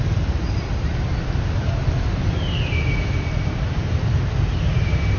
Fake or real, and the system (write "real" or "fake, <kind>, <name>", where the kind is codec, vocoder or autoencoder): real